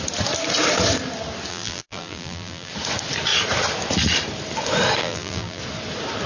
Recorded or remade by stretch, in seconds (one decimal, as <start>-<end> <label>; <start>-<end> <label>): 0.0-1.5 recorded; 1.5-2.7 remade; 2.7-5.0 recorded; 5.0-5.6 remade; 5.6-6.3 recorded